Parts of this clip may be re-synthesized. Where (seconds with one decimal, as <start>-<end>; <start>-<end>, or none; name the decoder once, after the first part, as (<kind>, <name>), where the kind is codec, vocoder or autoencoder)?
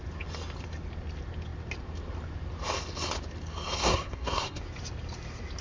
3.8-4.6 (codec, SNAC)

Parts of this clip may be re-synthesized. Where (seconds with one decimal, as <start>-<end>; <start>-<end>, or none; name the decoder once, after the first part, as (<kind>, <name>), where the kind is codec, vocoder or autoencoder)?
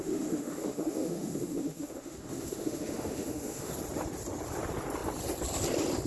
0.0-3.7 (autoencoder, DAC-VAE)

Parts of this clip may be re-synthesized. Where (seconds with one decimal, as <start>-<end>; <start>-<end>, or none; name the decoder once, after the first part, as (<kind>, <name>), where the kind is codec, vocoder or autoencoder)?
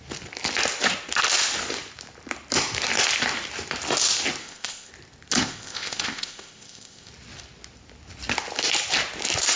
4.4-4.9 (codec, ZipCodec); 5.4-7.1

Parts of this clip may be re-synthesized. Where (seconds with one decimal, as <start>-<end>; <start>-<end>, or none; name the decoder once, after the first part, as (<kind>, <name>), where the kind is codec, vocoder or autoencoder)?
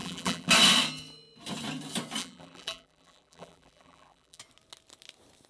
0.0-0.5 (vocoder, BigVGAN v2); 2.2-4.4